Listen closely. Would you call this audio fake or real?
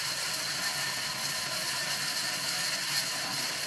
real